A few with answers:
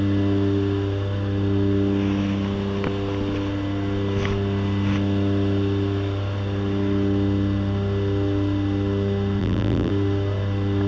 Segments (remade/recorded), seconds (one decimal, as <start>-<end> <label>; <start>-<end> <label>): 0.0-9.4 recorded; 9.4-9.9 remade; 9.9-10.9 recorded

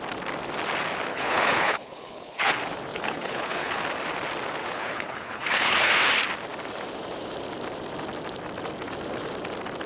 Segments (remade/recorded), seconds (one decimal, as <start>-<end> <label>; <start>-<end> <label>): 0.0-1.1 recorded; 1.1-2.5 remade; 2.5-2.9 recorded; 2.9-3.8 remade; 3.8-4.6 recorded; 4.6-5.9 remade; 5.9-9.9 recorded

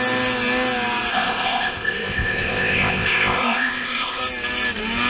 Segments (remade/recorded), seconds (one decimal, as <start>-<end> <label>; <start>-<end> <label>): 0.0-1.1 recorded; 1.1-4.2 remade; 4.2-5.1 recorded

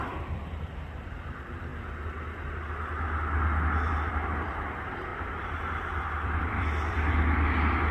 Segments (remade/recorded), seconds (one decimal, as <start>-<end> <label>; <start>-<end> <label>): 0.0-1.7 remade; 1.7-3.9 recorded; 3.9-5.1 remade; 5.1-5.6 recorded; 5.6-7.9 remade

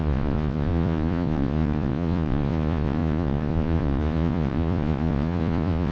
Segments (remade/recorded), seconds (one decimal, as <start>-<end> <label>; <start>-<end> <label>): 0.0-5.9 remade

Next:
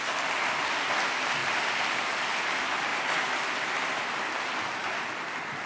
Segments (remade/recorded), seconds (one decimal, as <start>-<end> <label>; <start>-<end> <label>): 0.0-1.4 recorded; 1.4-2.1 remade; 2.1-2.9 recorded; 2.9-4.1 remade; 4.1-4.8 recorded; 4.8-5.7 remade